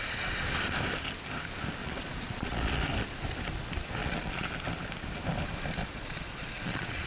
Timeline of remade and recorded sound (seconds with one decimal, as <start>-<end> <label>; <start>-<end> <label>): 0.0-1.8 recorded; 1.8-2.8 remade; 2.8-4.0 recorded; 4.0-4.5 remade; 4.5-5.8 recorded; 5.8-7.1 remade